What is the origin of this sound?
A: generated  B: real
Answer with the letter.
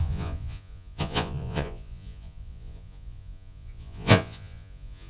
A